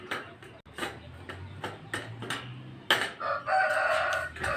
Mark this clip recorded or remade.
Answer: recorded